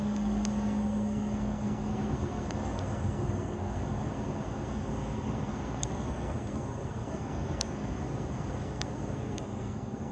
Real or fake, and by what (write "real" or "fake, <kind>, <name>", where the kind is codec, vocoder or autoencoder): fake, codec, SNAC